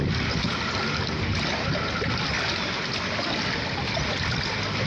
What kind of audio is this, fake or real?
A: real